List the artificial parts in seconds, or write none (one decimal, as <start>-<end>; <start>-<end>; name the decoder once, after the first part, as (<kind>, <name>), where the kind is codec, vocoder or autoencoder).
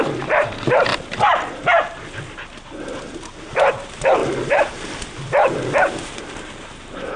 0.0-0.9 (vocoder, BigVGAN v2); 3.3-7.2